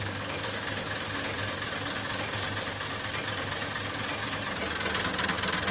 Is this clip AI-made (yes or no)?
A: no